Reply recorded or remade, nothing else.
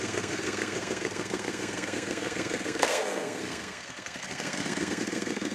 remade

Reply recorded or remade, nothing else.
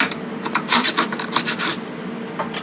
recorded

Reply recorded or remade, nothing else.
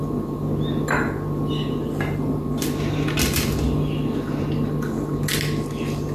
recorded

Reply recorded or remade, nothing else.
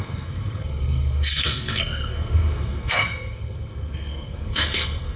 remade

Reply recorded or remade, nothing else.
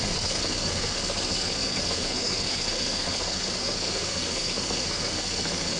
remade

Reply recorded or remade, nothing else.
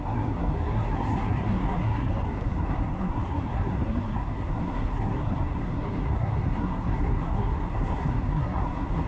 remade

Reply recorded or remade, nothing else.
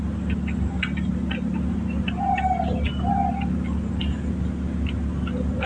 recorded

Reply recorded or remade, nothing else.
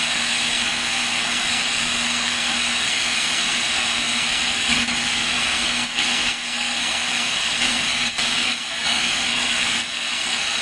remade